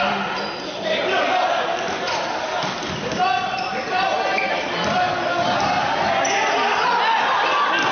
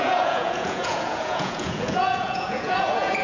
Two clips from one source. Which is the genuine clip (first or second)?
first